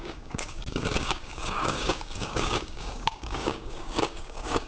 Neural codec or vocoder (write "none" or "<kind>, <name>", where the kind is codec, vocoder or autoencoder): codec, DAC